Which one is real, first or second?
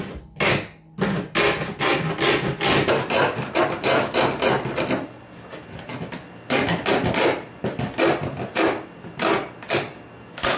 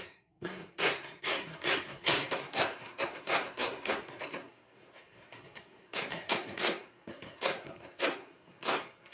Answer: first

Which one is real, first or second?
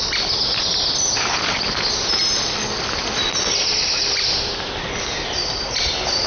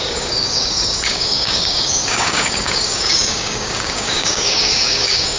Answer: first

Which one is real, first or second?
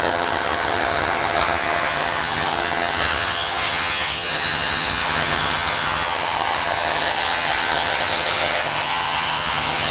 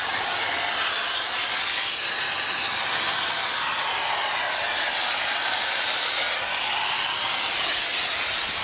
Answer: second